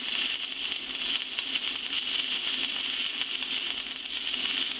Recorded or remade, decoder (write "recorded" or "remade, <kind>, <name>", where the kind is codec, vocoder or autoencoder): remade, vocoder, BigVGAN v2